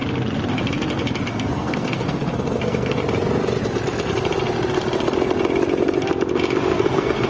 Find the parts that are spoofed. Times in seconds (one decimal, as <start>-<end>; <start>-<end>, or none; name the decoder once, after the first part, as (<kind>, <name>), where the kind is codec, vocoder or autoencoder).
1.3-3.0 (codec, SNAC); 6.8-7.3